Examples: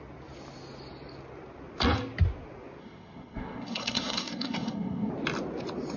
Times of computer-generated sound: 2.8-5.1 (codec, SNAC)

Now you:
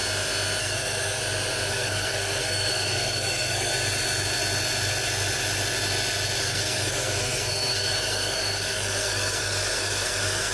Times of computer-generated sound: 0.6-1.2 (codec, SNAC); 1.7-3.7; 6.4-10.5